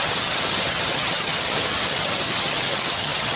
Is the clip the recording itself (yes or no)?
no